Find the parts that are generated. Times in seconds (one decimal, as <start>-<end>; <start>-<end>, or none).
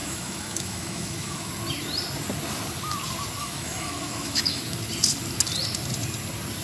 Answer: 0.0-1.5; 3.4-4.6